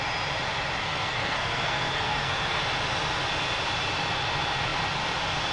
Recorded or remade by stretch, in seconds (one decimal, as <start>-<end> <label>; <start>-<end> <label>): 0.0-0.8 recorded; 0.8-2.6 remade; 2.6-5.5 recorded